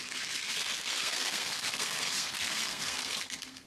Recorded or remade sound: remade